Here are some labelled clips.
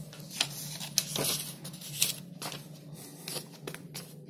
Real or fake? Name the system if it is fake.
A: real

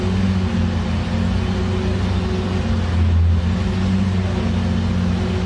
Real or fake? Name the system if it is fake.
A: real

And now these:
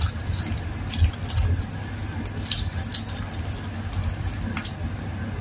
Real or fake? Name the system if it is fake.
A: real